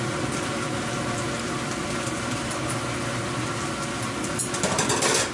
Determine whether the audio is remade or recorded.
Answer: recorded